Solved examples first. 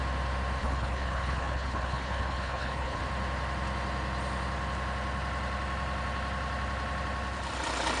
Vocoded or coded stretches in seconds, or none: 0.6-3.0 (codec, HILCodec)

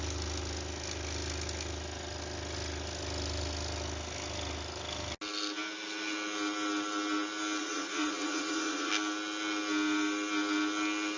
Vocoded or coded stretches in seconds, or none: 7.6-8.9 (vocoder, Vocos)

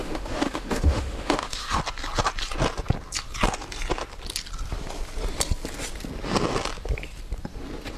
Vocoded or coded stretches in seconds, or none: 0.0-1.8 (autoencoder, DAC-VAE)

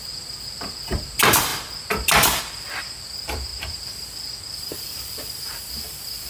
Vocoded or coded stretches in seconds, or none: 0.0-1.5 (vocoder, BigVGAN v2); 2.4-6.3

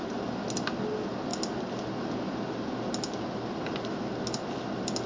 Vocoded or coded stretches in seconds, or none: none